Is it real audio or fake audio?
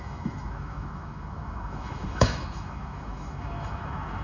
fake